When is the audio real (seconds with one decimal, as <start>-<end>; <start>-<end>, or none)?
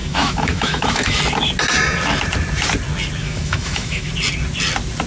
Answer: 1.2-3.2; 4.1-5.1